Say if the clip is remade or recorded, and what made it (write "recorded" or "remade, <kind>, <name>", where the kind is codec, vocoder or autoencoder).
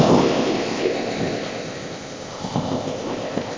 remade, codec, ZipCodec